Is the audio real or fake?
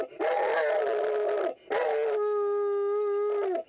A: real